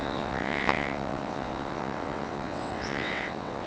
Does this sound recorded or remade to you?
remade